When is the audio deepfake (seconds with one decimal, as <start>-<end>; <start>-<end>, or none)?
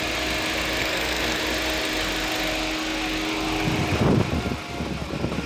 0.8-1.4